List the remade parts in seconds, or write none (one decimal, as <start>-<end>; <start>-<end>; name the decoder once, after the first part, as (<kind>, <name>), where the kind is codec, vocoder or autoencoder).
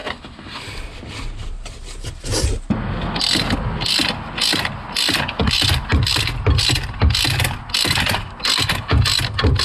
none